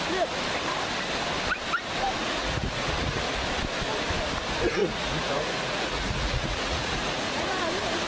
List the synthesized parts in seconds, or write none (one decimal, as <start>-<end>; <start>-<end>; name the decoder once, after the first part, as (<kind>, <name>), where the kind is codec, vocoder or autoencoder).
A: 2.2-3.3 (vocoder, Vocos); 4.8-7.6